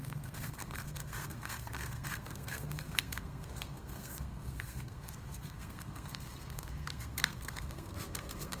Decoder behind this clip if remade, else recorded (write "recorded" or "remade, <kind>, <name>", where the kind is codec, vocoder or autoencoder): remade, codec, SNAC